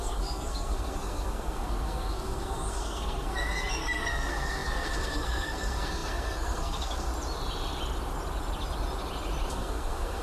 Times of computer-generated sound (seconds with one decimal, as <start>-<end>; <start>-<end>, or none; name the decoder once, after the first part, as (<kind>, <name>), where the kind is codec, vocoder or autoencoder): 0.0-7.1 (codec, SNAC); 9.5-10.2